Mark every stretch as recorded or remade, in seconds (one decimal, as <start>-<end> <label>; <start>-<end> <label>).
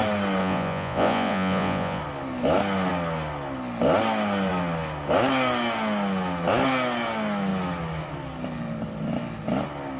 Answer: 0.0-0.4 recorded; 0.4-2.0 remade; 2.0-10.0 recorded